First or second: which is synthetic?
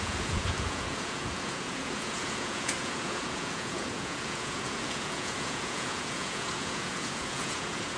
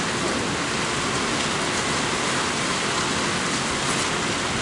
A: first